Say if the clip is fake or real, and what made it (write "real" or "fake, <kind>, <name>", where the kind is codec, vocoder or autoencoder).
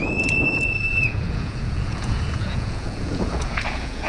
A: fake, vocoder, Vocos